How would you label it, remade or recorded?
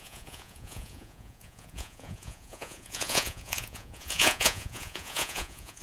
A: remade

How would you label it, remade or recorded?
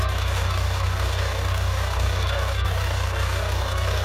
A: remade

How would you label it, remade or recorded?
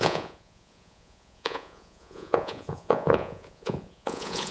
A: remade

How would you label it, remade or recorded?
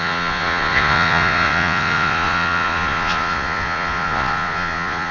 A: remade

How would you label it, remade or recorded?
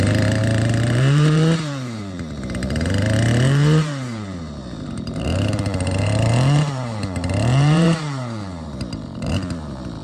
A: remade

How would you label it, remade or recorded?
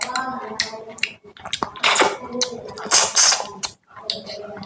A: recorded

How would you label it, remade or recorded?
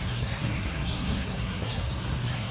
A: remade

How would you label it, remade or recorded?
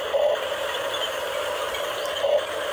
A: recorded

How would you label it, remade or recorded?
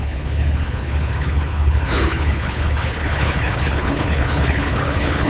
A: remade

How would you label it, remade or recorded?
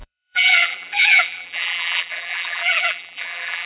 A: remade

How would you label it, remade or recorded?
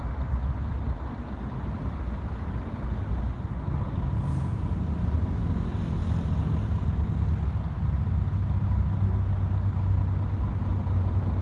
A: recorded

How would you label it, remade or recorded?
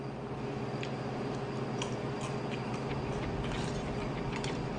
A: recorded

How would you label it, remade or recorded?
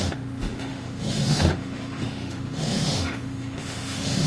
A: remade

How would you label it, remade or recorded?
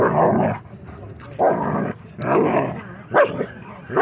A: recorded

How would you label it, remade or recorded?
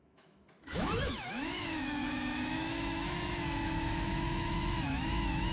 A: remade